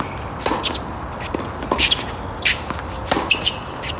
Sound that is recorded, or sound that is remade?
recorded